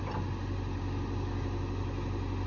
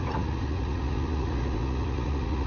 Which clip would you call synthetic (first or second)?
second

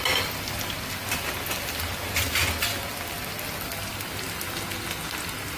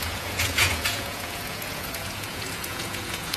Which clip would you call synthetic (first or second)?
second